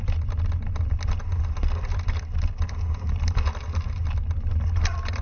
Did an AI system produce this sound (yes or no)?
no